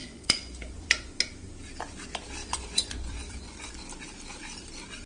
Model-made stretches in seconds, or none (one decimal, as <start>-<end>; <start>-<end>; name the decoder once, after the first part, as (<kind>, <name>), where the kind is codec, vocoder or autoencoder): 0.0-1.1 (vocoder, Vocos); 2.4-3.7